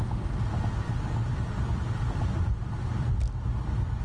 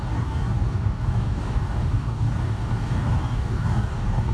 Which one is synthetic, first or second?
second